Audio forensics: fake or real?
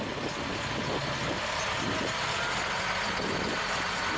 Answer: real